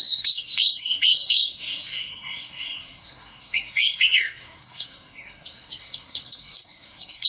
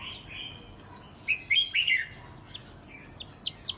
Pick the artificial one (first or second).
first